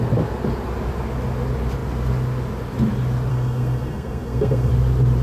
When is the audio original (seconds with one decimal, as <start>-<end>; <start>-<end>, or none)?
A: 0.0-3.3; 4.7-5.2